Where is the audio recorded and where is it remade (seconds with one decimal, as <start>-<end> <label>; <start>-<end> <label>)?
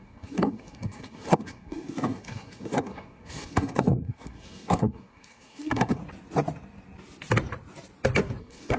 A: 0.0-6.0 remade; 6.0-8.4 recorded; 8.4-8.8 remade